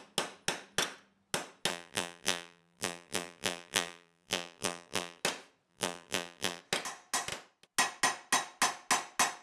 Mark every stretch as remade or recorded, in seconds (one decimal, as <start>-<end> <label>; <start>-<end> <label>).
0.0-1.7 recorded; 1.7-5.2 remade; 5.2-5.7 recorded; 5.7-6.6 remade; 6.6-9.4 recorded

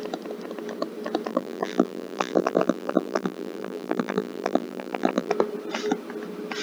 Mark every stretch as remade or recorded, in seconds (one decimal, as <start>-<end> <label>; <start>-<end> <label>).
0.0-1.3 recorded; 1.3-5.3 remade; 5.3-6.6 recorded

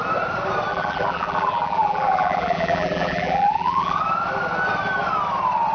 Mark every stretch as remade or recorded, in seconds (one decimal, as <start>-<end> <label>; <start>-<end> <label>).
0.0-0.7 recorded; 0.7-4.0 remade; 4.0-5.7 recorded